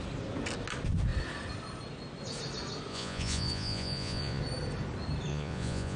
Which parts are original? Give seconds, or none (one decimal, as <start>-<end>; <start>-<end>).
0.0-2.9; 4.4-5.3